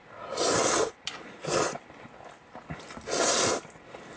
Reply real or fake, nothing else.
real